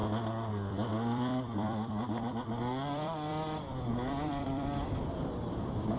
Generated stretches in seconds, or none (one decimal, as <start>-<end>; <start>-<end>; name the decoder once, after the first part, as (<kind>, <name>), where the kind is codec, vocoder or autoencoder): 0.5-6.0 (vocoder, BigVGAN v2)